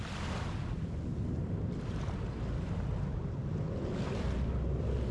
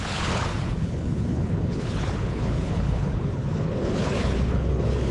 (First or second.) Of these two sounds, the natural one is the first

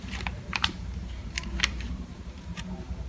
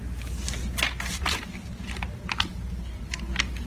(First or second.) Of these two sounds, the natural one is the second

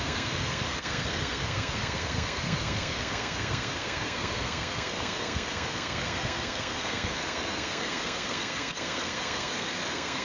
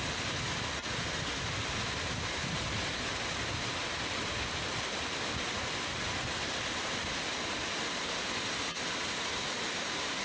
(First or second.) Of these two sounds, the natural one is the second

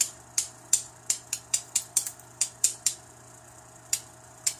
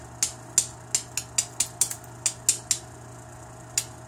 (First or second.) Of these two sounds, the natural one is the second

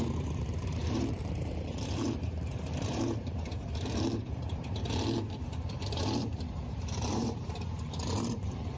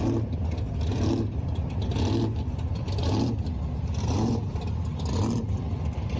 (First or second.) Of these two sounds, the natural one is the second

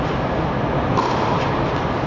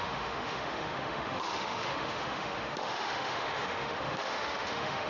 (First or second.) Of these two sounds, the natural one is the first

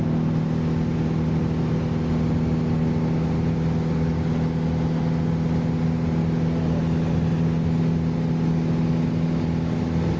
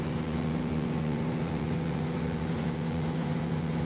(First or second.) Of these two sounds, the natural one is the first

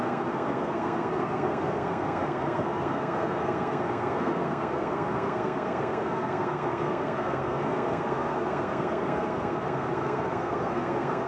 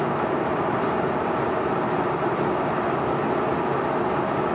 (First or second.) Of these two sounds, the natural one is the second